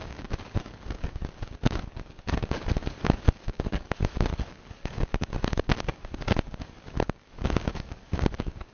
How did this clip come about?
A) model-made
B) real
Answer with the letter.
A